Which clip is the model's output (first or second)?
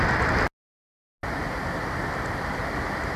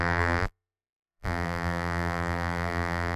second